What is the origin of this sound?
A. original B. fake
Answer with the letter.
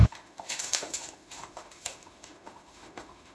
B